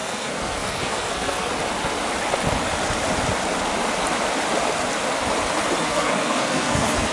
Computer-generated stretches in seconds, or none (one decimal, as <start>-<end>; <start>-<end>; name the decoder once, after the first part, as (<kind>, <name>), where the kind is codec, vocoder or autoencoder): 0.0-1.5 (codec, SNAC); 5.8-7.1